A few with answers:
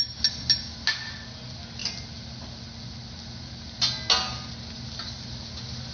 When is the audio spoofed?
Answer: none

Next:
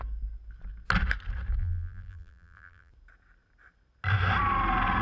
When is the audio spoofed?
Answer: 1.6-2.9 (vocoder, BigVGAN v2)

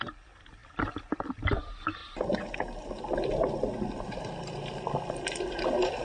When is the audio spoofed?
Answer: none

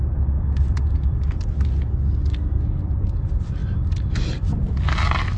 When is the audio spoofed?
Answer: none

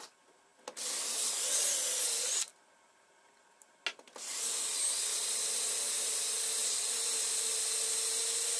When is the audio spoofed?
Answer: none